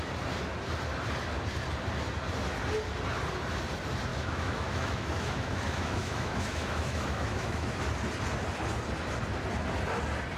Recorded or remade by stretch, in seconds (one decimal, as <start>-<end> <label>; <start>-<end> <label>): 0.0-4.1 recorded; 4.1-7.8 remade; 7.8-10.4 recorded